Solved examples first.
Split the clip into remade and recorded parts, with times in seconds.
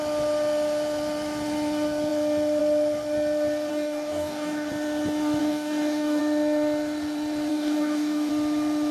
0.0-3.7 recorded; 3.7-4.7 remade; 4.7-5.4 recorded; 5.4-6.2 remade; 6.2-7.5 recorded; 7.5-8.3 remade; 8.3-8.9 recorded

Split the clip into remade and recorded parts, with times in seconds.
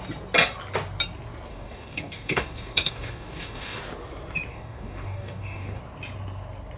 0.0-1.5 recorded; 1.5-3.8 remade; 3.8-4.5 recorded; 4.5-5.8 remade; 5.8-6.8 recorded